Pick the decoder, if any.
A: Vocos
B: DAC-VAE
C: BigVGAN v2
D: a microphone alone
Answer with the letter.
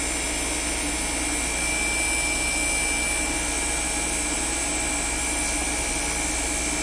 D